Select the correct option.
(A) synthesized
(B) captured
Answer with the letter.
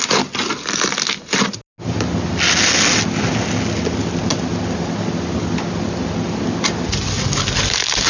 B